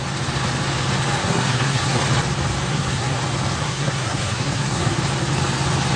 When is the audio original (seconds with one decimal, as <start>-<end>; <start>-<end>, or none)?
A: 0.0-1.2; 2.0-2.7; 3.2-3.6; 5.0-6.0